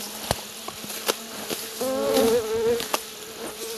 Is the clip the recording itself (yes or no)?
yes